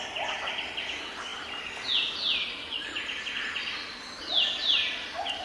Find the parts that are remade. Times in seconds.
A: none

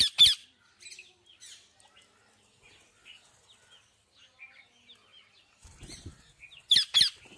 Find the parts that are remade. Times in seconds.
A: 5.1-6.2

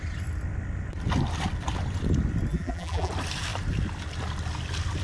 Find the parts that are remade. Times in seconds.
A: 2.5-3.1